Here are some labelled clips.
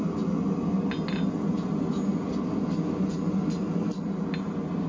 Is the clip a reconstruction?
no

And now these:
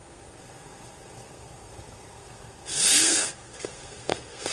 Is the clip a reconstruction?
yes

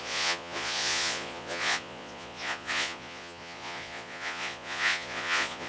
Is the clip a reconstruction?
yes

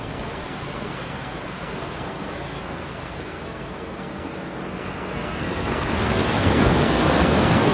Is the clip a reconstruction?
yes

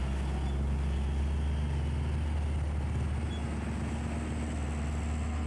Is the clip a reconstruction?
no